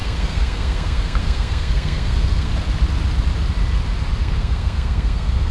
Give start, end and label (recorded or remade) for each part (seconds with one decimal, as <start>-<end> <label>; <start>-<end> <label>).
0.0-2.5 remade; 2.5-4.2 recorded; 4.2-5.5 remade